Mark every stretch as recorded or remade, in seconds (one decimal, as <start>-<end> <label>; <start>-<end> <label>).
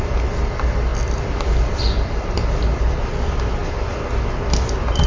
0.0-0.9 recorded; 0.9-2.9 remade; 2.9-5.1 recorded